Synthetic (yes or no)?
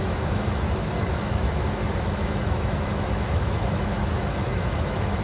yes